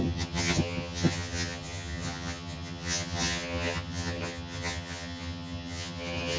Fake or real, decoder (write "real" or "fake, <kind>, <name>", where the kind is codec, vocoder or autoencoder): fake, vocoder, HiFi-GAN